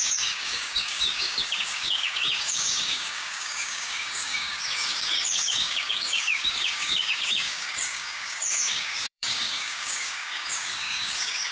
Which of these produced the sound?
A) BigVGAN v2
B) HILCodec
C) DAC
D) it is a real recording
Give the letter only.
C